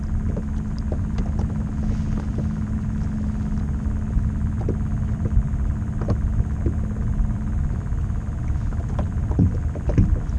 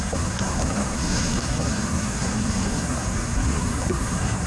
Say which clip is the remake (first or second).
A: second